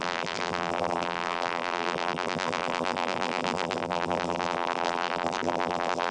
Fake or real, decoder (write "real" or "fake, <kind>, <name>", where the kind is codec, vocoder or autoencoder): fake, vocoder, BigVGAN v2